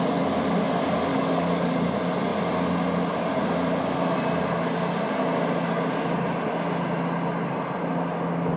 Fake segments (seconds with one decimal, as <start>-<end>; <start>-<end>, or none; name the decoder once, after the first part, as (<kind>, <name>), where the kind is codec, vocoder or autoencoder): 1.1-1.7 (codec, DAC)